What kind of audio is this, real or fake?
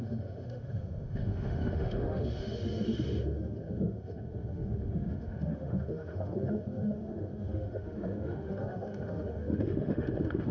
fake